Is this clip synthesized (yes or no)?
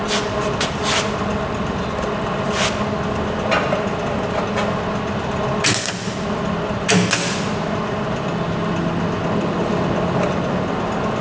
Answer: no